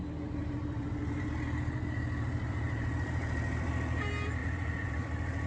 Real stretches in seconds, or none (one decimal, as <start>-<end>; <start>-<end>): 0.0-0.4; 3.7-4.4